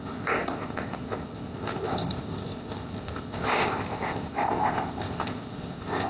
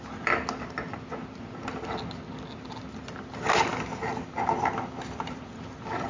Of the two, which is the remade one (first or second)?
first